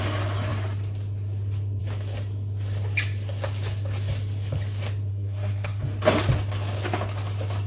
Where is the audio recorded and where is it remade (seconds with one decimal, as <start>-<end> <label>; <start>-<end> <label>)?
0.0-5.1 recorded; 5.1-5.8 remade; 5.8-7.7 recorded

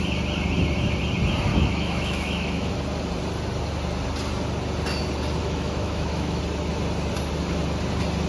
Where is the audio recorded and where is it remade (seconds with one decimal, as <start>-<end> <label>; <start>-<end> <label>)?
0.0-1.5 recorded; 1.5-2.7 remade; 2.7-5.4 recorded; 5.4-6.4 remade; 6.4-8.3 recorded

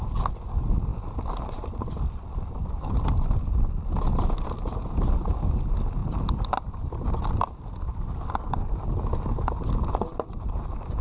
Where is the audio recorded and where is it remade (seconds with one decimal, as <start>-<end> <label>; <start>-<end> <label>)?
0.0-11.0 recorded

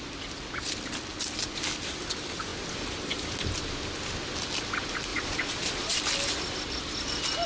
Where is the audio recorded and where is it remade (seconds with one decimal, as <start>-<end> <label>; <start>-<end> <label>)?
0.0-5.1 recorded; 5.1-6.0 remade; 6.0-7.5 recorded

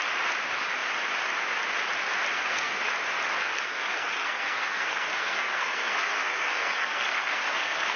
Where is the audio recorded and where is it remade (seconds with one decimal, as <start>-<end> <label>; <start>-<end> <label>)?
0.0-2.3 recorded; 2.3-2.9 remade; 2.9-3.4 recorded; 3.4-8.0 remade